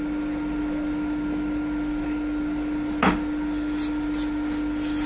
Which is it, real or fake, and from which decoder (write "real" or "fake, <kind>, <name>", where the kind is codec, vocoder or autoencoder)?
real